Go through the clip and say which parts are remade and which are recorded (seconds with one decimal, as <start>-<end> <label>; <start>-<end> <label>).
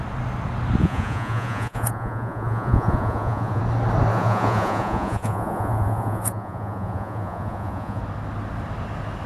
0.0-0.8 recorded; 0.8-3.6 remade; 3.6-4.1 recorded; 4.1-8.0 remade; 8.0-9.3 recorded